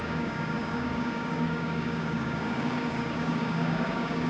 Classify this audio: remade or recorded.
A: remade